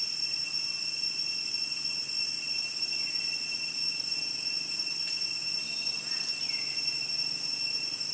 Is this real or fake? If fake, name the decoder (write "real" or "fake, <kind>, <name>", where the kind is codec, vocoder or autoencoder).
real